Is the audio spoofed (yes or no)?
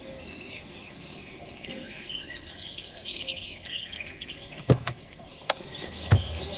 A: yes